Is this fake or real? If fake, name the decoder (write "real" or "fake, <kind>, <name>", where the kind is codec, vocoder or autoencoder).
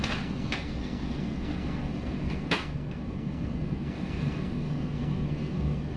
fake, codec, SNAC